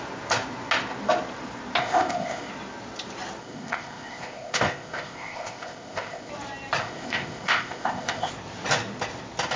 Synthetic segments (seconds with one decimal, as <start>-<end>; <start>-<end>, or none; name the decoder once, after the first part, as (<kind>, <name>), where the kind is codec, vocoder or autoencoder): 1.8-2.5 (codec, ZipCodec); 3.4-6.3; 6.8-8.3

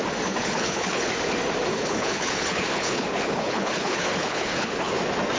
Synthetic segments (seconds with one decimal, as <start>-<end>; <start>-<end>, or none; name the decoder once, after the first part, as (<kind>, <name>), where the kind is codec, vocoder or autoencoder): 0.4-1.1 (codec, HILCodec); 1.7-4.9

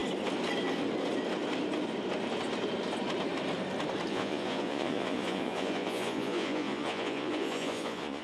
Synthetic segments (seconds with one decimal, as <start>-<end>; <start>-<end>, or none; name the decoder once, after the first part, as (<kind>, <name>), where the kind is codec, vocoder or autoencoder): 4.1-8.2 (vocoder, Vocos)